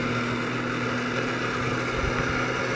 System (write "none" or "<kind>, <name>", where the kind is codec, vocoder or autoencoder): none